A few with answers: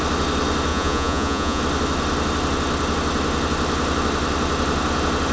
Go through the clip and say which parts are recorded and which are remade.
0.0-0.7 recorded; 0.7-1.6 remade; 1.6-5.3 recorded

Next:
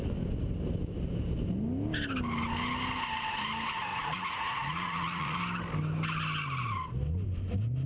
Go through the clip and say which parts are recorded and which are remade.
0.0-3.9 recorded; 3.9-5.4 remade; 5.4-7.9 recorded

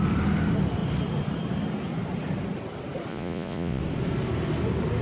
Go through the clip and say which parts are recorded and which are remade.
0.0-3.1 recorded; 3.1-3.8 remade; 3.8-5.0 recorded

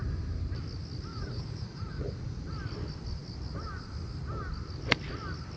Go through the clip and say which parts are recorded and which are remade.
0.0-1.1 recorded; 1.1-2.4 remade; 2.4-5.6 recorded